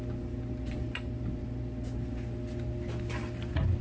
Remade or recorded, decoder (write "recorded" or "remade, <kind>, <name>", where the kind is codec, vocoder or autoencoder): recorded